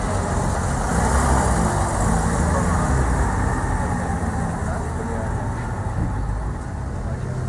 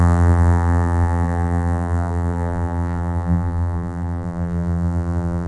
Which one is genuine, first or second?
first